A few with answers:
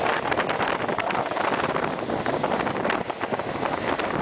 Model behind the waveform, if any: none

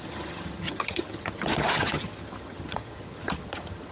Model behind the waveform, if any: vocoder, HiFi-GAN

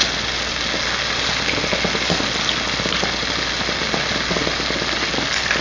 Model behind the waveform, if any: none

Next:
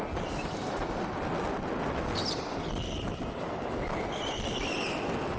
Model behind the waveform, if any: none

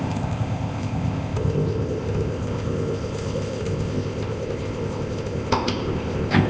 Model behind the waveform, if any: codec, ZipCodec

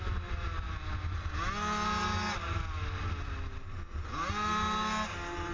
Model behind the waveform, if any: none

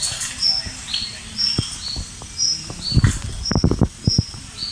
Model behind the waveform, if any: none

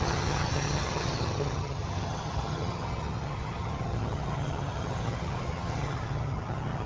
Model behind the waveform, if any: vocoder, HiFi-GAN